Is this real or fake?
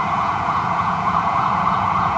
fake